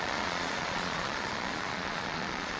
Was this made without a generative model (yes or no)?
no